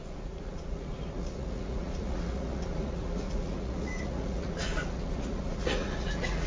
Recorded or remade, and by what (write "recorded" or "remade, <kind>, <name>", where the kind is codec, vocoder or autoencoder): remade, vocoder, Vocos